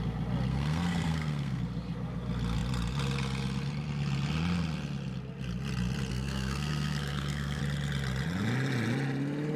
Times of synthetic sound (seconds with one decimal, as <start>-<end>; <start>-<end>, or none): 0.5-1.6; 6.1-7.6